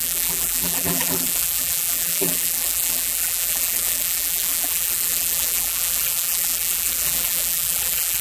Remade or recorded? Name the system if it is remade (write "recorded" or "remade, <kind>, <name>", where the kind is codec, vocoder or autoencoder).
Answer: remade, vocoder, BigVGAN v2